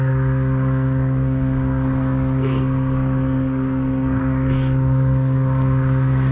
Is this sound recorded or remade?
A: remade